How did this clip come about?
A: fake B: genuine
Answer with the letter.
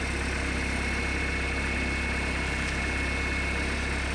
B